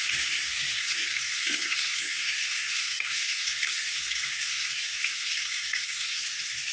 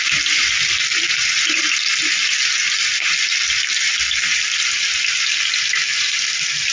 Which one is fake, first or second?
first